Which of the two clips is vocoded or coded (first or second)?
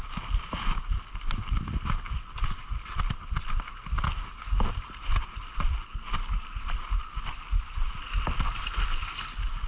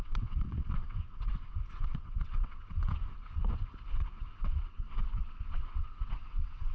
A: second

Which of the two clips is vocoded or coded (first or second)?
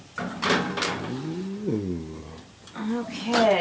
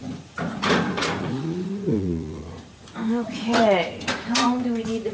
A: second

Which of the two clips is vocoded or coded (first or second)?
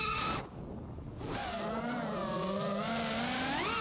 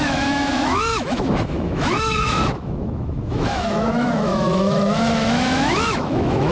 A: second